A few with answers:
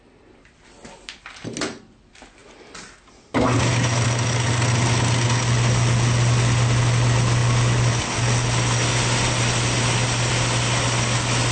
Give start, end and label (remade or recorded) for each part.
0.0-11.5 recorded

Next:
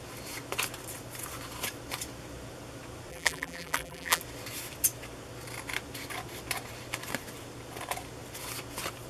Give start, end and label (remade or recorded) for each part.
0.0-3.1 recorded; 3.1-4.2 remade; 4.2-9.1 recorded

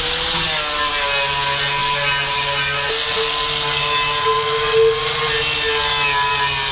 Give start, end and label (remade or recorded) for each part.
0.0-6.7 recorded

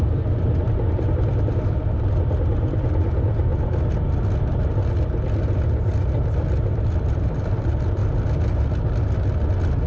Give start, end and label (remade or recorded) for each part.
0.0-3.5 remade; 3.5-6.7 recorded; 6.7-8.0 remade; 8.0-9.5 recorded; 9.5-9.9 remade

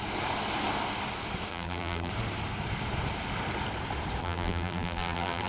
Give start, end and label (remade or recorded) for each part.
0.0-1.5 recorded; 1.5-2.1 remade; 2.1-4.2 recorded; 4.2-5.5 remade

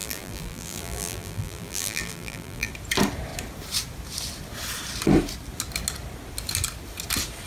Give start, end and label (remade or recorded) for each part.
0.0-2.7 remade; 2.7-7.5 recorded